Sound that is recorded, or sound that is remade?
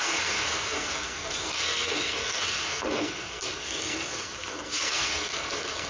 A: remade